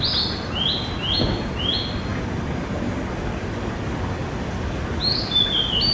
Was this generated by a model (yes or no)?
no